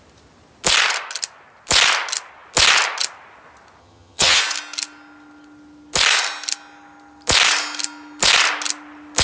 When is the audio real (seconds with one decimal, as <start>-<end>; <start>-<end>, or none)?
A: 0.0-3.8; 4.4-9.2